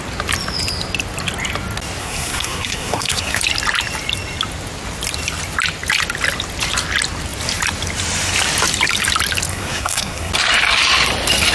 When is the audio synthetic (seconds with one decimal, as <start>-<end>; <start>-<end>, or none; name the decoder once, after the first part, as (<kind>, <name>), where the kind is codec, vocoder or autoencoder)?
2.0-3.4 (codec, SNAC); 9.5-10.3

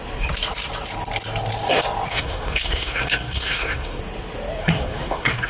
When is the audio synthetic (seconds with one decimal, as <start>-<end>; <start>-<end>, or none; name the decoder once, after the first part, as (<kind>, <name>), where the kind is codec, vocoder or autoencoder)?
2.1-4.0 (codec, SNAC); 4.6-5.5

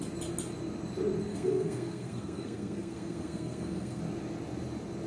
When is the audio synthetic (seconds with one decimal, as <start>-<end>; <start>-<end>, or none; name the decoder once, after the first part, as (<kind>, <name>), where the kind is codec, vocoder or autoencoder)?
1.3-4.0 (codec, SNAC)

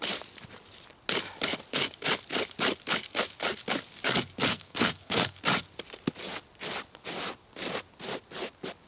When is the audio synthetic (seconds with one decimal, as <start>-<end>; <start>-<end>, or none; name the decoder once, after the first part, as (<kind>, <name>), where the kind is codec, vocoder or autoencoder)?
4.5-5.4 (codec, SNAC)

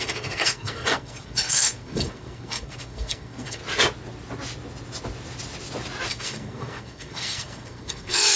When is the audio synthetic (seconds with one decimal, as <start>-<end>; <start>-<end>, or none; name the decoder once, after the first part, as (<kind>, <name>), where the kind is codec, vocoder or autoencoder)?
0.0-3.6 (codec, SNAC); 6.1-8.4